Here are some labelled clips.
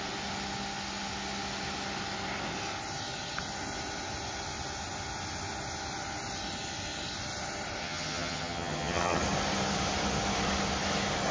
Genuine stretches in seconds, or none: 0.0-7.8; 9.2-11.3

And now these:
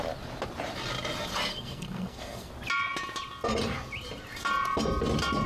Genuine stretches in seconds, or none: 0.0-1.5; 2.5-5.5

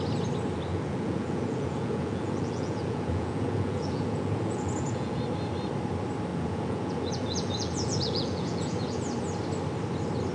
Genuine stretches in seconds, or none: 0.0-0.7; 5.2-6.3; 9.0-10.3

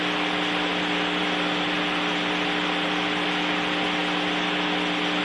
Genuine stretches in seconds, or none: 0.0-5.2

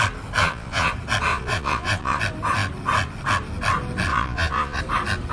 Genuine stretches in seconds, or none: 0.0-0.4; 0.9-1.3; 2.2-4.1; 4.8-5.3

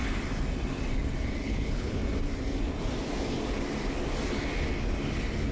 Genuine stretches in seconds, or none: 0.0-1.4; 2.0-5.5

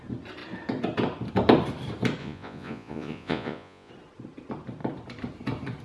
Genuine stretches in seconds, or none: 0.0-2.2; 3.9-5.8

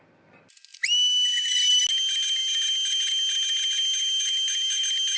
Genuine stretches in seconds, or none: 0.0-5.2